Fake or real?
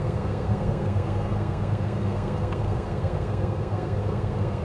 fake